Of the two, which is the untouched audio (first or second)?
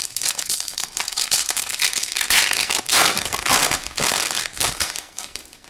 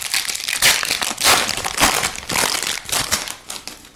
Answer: second